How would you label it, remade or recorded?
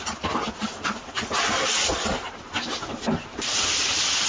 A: recorded